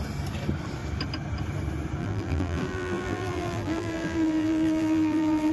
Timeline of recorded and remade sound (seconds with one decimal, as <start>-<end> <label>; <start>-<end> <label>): 0.0-2.0 recorded; 2.0-5.5 remade